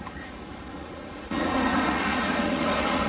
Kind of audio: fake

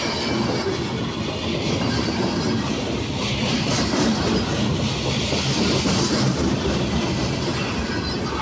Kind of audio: real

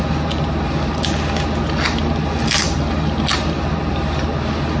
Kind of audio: real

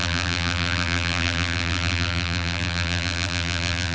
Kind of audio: fake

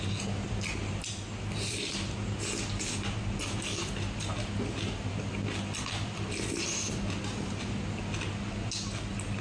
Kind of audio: real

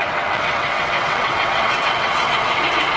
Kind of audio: fake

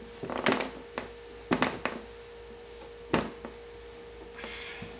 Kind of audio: real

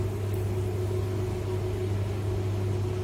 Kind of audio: real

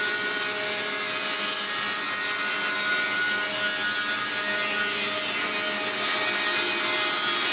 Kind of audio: real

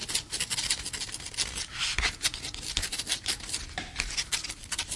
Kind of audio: real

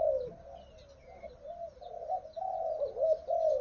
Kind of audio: real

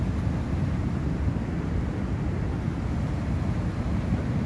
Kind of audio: real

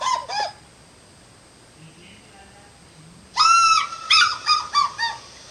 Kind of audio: real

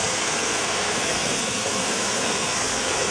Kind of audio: fake